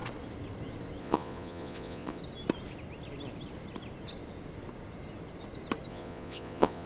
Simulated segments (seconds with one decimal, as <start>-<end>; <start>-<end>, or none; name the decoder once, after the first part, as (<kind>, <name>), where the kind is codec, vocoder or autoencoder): 1.0-2.2 (vocoder, Vocos); 5.9-6.9